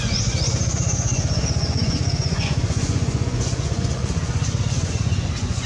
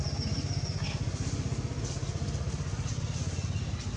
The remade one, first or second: first